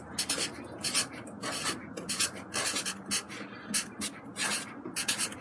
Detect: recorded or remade recorded